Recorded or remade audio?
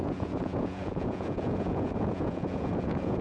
remade